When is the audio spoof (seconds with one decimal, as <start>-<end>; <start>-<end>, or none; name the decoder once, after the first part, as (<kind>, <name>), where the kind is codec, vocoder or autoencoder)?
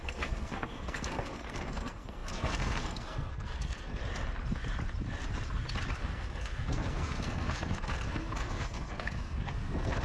0.0-4.0 (codec, SNAC); 6.0-10.0